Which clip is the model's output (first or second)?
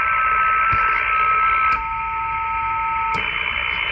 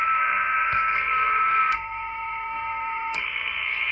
second